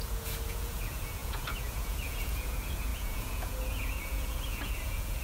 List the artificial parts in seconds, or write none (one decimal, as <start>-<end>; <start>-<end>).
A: 0.0-5.2